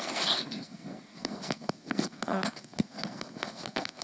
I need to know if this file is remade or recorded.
remade